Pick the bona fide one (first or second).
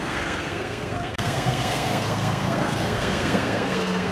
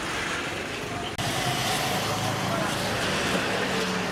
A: second